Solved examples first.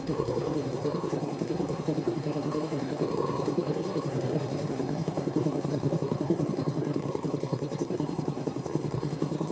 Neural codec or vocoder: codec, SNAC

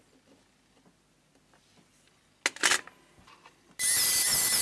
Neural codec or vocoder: none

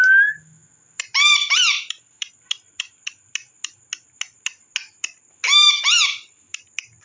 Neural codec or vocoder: none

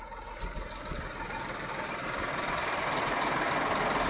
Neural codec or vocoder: none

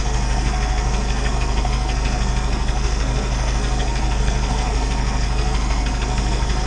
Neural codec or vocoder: codec, SNAC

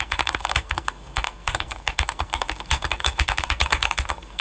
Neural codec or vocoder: codec, SNAC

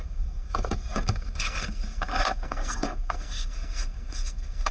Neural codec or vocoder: codec, SNAC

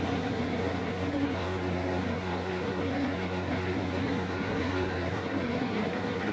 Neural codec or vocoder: codec, SNAC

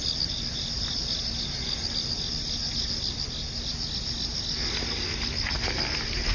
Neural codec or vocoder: none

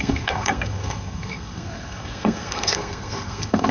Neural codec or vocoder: codec, SNAC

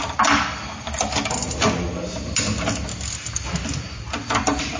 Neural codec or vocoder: none